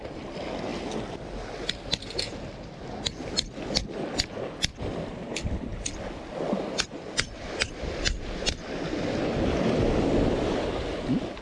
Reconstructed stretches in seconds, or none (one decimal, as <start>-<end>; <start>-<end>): none